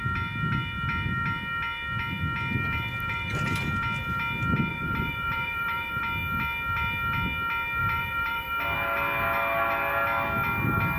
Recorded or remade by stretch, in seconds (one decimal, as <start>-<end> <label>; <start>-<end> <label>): 0.0-4.7 recorded; 4.7-6.0 remade; 6.0-7.8 recorded; 7.8-8.5 remade; 8.5-11.0 recorded